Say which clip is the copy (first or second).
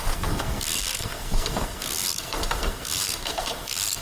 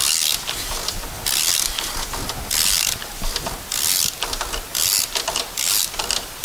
first